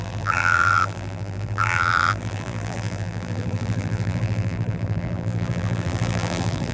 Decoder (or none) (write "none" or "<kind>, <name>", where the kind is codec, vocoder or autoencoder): vocoder, BigVGAN v2